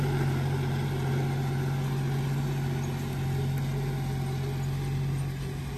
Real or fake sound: real